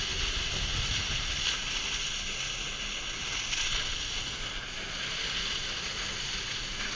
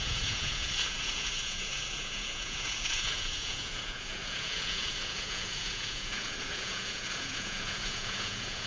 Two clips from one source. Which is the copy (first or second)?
second